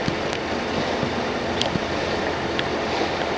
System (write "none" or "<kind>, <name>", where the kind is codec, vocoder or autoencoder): none